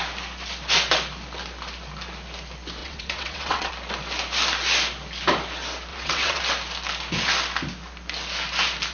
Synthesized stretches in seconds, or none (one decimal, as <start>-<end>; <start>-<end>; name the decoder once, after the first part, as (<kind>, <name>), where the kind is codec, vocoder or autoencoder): 2.8-3.7 (vocoder, WaveNeXt); 5.9-6.4